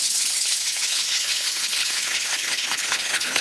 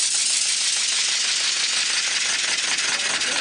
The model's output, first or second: first